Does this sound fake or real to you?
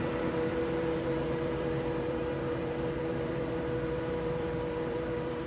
fake